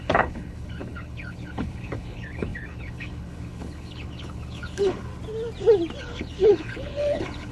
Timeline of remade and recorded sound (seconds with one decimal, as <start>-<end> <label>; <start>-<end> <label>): 0.0-5.1 remade; 5.1-6.0 recorded; 6.0-7.5 remade